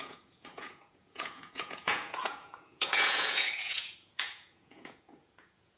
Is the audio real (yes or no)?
no